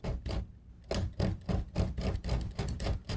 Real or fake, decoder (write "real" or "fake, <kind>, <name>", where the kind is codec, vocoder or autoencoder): real